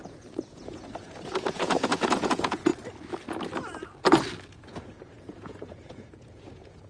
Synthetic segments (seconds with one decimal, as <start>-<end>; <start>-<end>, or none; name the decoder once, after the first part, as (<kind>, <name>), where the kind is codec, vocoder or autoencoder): 0.0-2.7 (vocoder, Vocos); 4.5-6.9